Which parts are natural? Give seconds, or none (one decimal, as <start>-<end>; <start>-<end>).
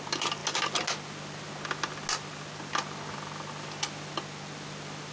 0.0-5.1